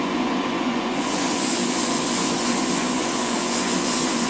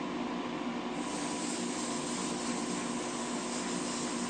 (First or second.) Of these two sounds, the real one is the second